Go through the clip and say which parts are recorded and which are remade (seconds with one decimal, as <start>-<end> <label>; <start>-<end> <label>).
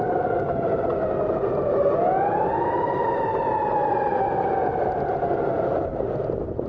0.0-6.7 recorded